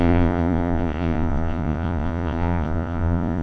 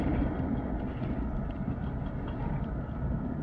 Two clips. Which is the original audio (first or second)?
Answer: second